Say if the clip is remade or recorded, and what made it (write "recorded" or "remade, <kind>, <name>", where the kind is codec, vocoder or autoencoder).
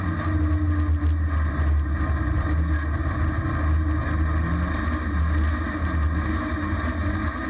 recorded